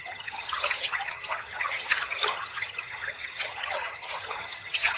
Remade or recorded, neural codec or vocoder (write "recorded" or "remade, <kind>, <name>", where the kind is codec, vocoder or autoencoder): remade, vocoder, HiFi-GAN